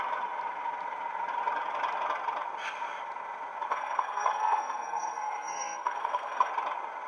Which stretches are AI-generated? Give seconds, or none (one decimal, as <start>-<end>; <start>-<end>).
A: 3.7-6.5